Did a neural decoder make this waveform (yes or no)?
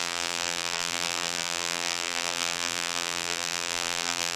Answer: yes